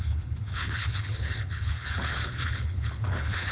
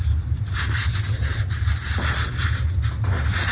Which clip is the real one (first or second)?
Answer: second